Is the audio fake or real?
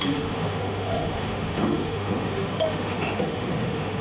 fake